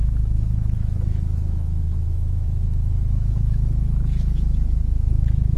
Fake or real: fake